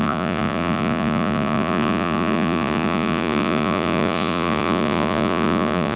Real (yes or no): no